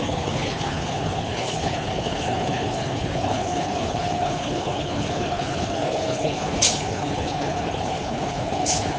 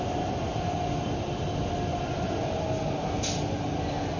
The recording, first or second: second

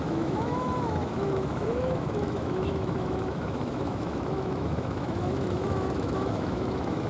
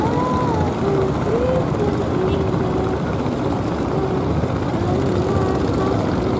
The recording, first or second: second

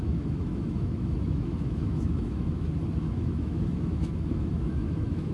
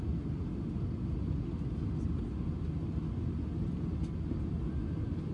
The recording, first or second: second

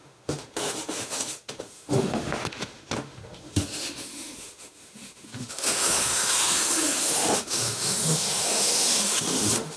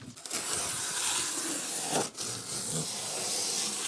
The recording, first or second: second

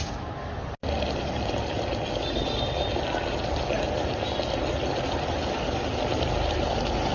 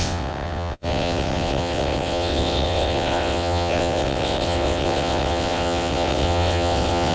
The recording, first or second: first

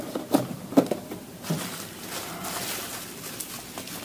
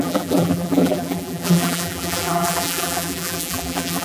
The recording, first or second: first